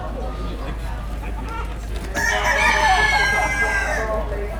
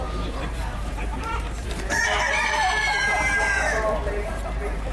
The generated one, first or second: second